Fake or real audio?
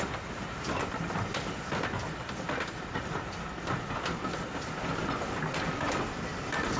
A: real